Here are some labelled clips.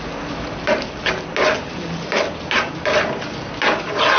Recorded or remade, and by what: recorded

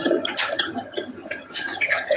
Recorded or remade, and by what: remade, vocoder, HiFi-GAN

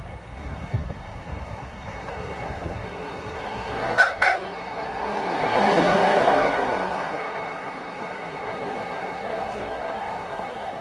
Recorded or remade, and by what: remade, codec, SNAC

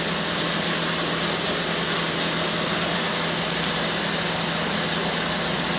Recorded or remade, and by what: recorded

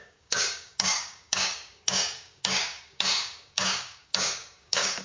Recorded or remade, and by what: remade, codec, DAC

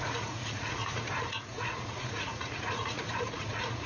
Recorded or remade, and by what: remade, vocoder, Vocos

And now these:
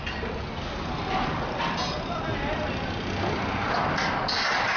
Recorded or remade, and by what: recorded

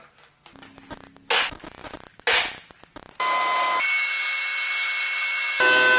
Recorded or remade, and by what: recorded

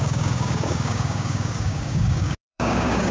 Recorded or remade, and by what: remade, codec, DAC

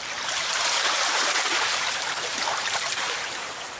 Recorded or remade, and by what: remade, vocoder, BigVGAN v2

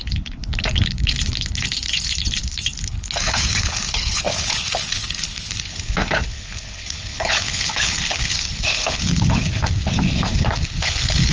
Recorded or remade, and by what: remade, codec, HILCodec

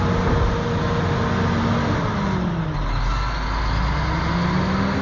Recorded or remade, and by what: recorded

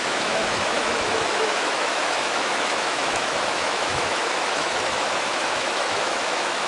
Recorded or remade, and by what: remade, autoencoder, DAC-VAE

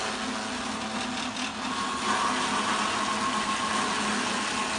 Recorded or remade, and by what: recorded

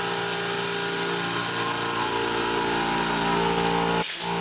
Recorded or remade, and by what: recorded